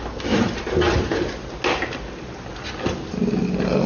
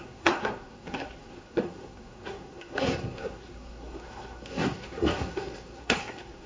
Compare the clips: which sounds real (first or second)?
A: first